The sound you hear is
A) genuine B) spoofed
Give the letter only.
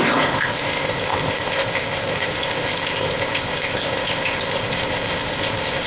B